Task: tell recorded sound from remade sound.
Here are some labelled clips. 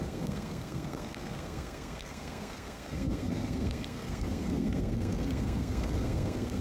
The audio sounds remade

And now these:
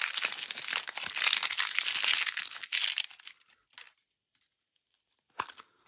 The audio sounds recorded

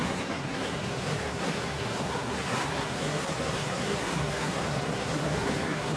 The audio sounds remade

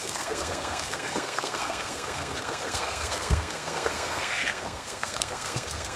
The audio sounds remade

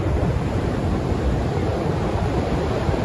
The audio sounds recorded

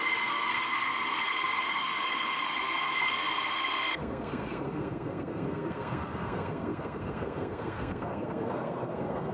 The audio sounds remade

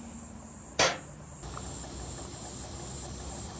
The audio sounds recorded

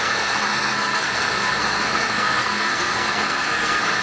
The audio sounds remade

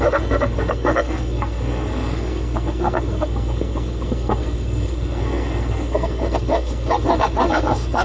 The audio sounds remade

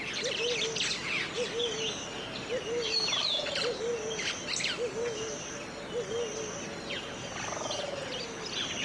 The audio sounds recorded